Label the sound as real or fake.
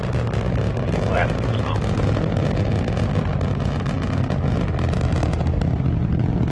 real